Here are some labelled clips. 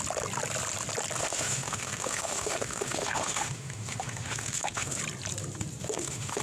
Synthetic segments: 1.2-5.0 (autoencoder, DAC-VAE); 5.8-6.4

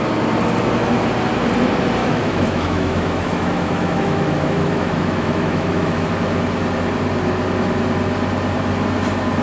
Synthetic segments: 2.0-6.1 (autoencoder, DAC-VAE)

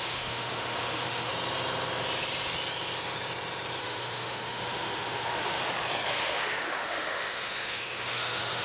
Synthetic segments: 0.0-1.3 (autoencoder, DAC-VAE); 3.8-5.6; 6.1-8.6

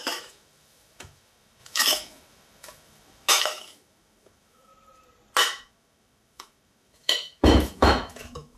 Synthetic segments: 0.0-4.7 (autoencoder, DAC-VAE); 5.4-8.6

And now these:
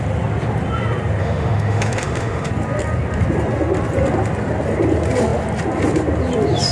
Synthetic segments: 1.2-2.5 (autoencoder, DAC-VAE)